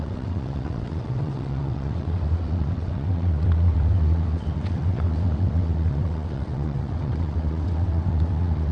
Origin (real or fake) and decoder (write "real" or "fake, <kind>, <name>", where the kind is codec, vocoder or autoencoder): fake, vocoder, WaveNeXt